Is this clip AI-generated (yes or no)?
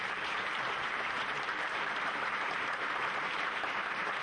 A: yes